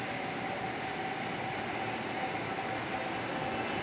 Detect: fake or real real